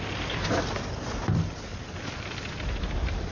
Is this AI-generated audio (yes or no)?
no